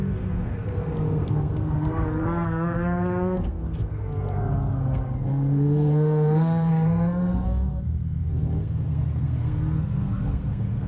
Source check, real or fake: fake